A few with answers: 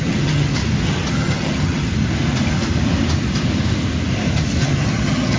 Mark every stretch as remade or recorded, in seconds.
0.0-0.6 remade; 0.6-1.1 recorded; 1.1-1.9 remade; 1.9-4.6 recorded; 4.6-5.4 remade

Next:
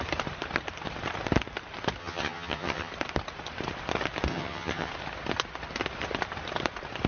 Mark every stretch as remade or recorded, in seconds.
0.0-2.0 recorded; 2.0-2.9 remade; 2.9-4.3 recorded; 4.3-4.9 remade; 4.9-7.1 recorded

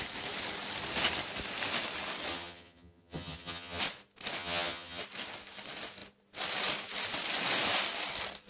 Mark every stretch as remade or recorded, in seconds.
0.0-2.3 recorded; 2.3-3.8 remade; 3.8-4.4 recorded; 4.4-5.0 remade; 5.0-8.5 recorded

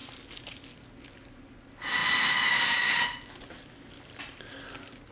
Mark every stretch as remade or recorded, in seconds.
0.0-5.1 recorded

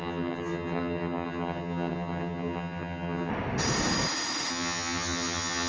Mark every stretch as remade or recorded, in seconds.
0.0-3.3 remade; 3.3-4.5 recorded; 4.5-5.7 remade

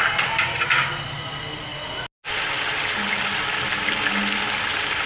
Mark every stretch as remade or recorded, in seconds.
0.0-5.1 recorded

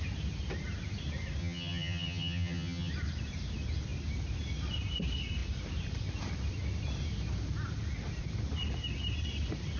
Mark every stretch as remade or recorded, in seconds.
0.0-1.4 recorded; 1.4-2.9 remade; 2.9-9.8 recorded